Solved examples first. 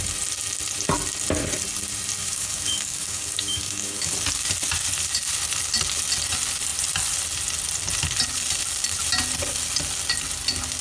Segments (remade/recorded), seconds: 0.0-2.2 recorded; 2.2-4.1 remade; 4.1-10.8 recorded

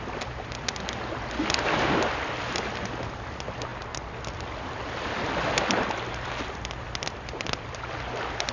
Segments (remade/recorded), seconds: 0.0-8.5 recorded